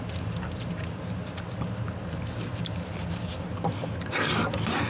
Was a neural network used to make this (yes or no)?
no